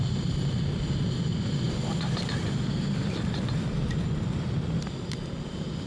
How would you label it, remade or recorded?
recorded